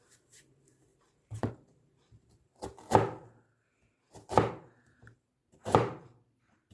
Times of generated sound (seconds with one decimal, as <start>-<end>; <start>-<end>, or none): 0.0-2.5; 4.5-6.7